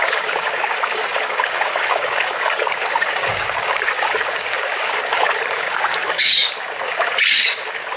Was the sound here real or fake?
fake